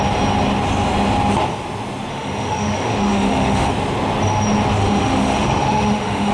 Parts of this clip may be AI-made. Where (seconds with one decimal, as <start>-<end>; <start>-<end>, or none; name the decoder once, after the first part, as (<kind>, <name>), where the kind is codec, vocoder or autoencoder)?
2.1-3.7 (autoencoder, DAC-VAE); 4.8-6.3